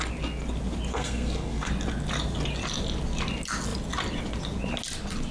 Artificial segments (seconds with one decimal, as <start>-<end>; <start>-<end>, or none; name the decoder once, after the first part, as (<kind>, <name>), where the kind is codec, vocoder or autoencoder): 0.9-1.7 (codec, SNAC)